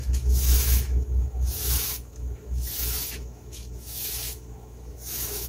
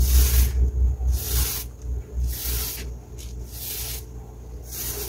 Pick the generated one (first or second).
first